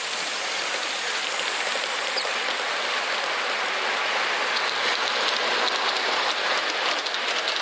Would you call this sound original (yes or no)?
yes